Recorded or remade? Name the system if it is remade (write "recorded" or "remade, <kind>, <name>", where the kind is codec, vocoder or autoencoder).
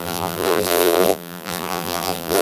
remade, vocoder, BigVGAN v2